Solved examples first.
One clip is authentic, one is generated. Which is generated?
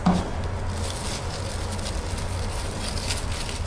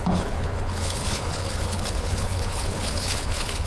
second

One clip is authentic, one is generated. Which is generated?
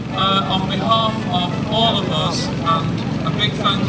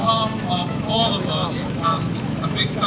second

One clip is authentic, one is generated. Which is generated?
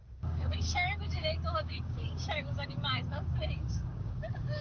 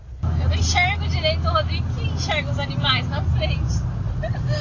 first